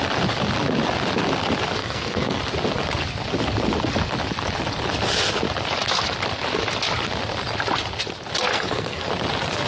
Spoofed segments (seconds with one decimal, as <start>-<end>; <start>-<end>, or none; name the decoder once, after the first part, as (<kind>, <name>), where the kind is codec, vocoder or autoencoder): 1.8-2.4 (codec, SNAC); 8.5-9.1

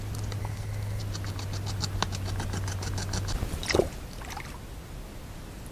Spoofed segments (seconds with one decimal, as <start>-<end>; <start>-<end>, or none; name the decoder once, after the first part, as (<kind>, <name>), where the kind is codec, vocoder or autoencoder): 0.4-1.0 (codec, SNAC)

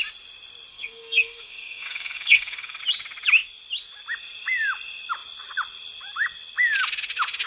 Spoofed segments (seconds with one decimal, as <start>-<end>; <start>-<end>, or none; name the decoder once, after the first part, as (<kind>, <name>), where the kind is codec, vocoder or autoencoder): 0.7-2.8 (codec, SNAC)

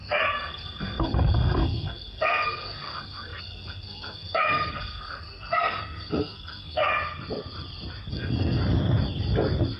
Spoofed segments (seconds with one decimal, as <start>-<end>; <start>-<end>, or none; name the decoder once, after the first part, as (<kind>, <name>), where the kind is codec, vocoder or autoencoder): 0.0-6.9 (codec, SNAC); 8.1-8.6

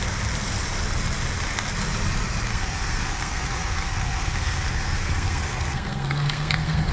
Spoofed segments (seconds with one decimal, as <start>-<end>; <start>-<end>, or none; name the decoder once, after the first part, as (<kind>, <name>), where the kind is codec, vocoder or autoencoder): 2.5-6.9 (codec, SNAC)